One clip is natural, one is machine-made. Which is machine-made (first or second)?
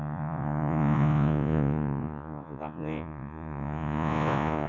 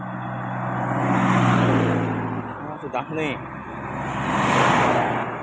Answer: first